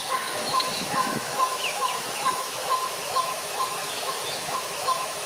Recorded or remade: remade